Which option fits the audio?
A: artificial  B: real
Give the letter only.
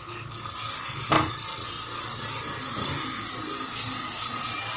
B